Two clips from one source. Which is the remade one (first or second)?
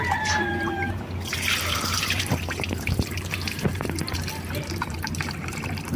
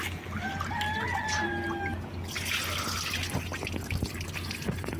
first